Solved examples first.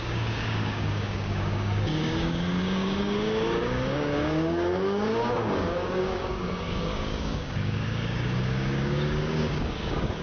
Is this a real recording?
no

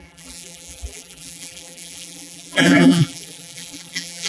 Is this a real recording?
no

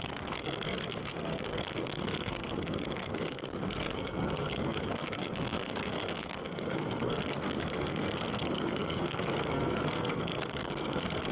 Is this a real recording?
no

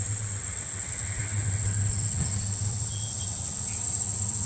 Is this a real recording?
no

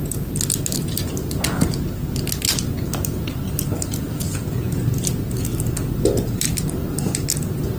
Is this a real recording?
yes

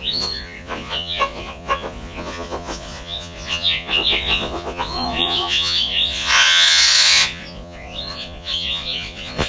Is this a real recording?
no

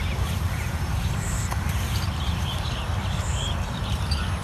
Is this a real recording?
no